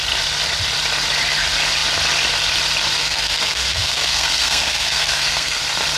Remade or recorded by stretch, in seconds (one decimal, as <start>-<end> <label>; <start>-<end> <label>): 0.0-3.0 recorded; 3.0-5.6 remade; 5.6-6.0 recorded